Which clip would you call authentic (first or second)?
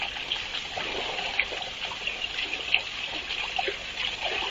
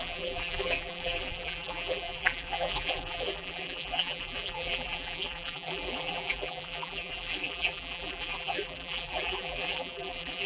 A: first